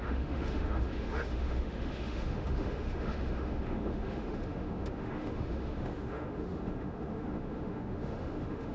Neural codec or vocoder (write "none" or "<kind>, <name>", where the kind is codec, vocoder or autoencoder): autoencoder, DAC-VAE